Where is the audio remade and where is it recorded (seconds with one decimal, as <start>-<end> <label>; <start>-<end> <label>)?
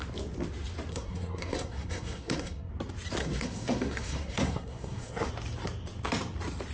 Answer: 0.0-0.9 recorded; 0.9-2.7 remade; 2.7-3.2 recorded; 3.2-5.3 remade; 5.3-6.7 recorded